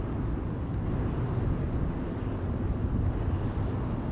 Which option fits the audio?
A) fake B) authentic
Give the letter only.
B